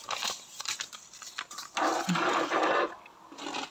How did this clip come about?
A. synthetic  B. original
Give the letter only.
B